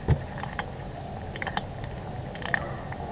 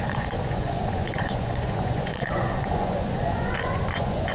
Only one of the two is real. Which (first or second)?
first